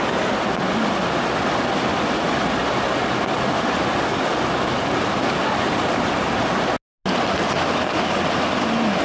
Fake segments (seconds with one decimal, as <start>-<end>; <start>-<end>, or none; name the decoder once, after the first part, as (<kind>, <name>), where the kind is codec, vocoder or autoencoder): none